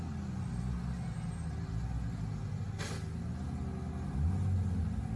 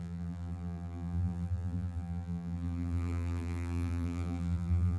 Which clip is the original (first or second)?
first